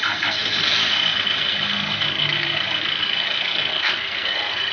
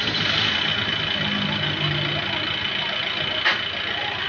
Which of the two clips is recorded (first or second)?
second